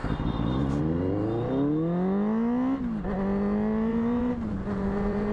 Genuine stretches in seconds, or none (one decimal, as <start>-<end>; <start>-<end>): 0.0-3.9